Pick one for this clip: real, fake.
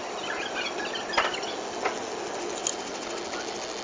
real